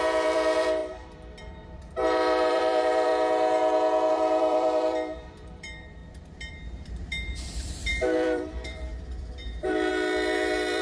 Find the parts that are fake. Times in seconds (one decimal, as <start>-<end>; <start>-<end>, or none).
0.0-3.1; 4.1-6.0; 6.5-10.8